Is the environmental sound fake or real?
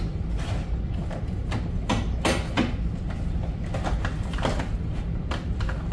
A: real